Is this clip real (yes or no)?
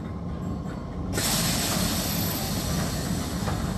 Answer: yes